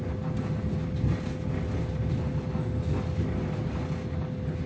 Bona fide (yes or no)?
yes